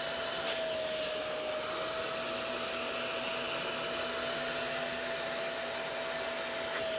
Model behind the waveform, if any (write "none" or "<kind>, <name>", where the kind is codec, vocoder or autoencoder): none